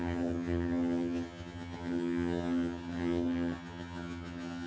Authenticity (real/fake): fake